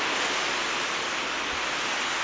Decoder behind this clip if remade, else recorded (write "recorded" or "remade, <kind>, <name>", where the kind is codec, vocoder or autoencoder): recorded